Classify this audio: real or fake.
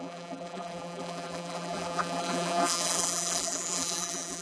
fake